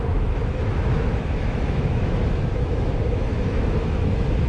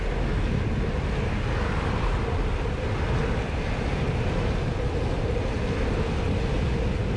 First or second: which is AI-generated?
first